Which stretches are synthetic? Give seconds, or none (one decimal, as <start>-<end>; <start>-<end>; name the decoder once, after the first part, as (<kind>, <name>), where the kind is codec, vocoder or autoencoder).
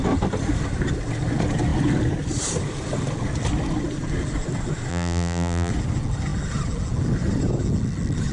4.9-5.7 (vocoder, BigVGAN v2)